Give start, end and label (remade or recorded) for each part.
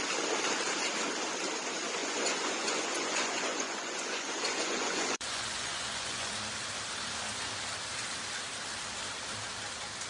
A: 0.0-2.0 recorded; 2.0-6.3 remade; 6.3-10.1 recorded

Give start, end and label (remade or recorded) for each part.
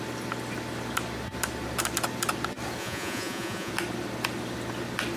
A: 0.0-2.8 recorded; 2.8-3.7 remade; 3.7-5.2 recorded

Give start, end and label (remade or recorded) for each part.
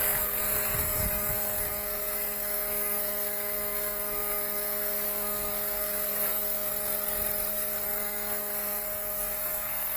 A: 0.0-6.7 remade; 6.7-7.5 recorded; 7.5-10.0 remade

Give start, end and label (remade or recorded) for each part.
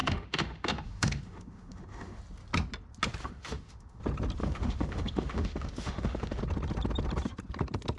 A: 0.0-2.2 remade; 2.2-3.2 recorded; 3.2-4.0 remade; 4.0-4.4 recorded; 4.4-6.4 remade; 6.4-8.0 recorded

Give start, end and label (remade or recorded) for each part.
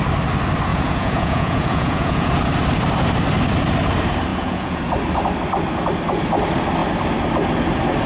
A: 0.0-0.7 recorded; 0.7-2.3 remade; 2.3-4.3 recorded; 4.3-4.8 remade; 4.8-8.1 recorded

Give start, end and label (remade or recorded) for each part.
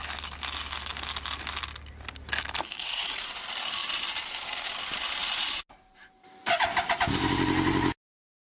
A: 0.0-2.8 recorded; 2.8-3.4 remade; 3.4-8.6 recorded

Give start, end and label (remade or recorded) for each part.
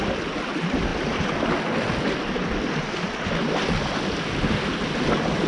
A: 0.0-5.5 recorded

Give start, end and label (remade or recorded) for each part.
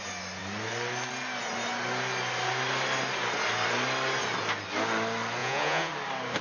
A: 0.0-5.4 recorded; 5.4-5.9 remade; 5.9-6.4 recorded